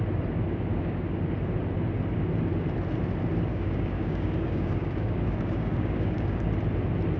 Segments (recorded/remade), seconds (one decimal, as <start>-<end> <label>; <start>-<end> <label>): 0.0-0.7 recorded; 0.7-1.2 remade; 1.2-3.5 recorded; 3.5-6.5 remade; 6.5-7.2 recorded